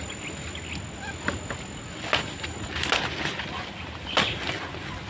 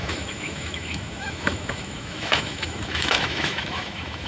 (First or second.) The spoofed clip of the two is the second